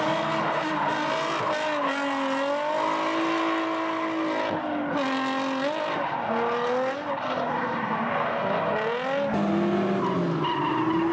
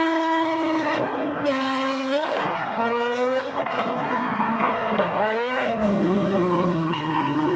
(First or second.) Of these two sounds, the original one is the first